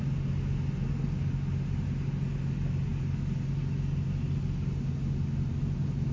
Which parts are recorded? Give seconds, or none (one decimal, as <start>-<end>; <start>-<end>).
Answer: 0.0-6.1